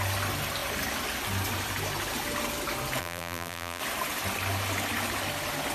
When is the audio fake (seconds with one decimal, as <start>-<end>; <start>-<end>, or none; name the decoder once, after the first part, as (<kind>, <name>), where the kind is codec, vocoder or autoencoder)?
3.0-3.8 (vocoder, BigVGAN v2)